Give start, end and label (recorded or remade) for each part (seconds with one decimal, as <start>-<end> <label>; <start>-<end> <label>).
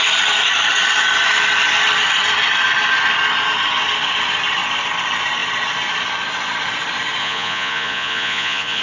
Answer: 0.0-7.2 recorded; 7.2-8.8 remade